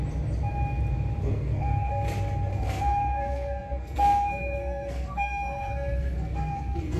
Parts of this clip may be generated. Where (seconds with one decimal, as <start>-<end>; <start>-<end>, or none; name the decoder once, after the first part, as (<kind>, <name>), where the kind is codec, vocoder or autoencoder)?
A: 1.2-1.9 (codec, SNAC); 2.5-7.0